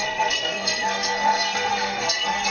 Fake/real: fake